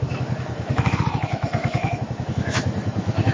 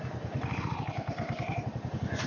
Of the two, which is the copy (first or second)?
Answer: first